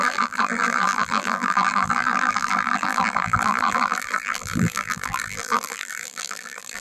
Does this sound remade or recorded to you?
remade